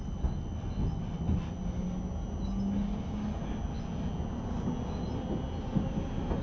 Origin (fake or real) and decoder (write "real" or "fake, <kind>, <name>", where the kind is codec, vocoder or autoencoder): real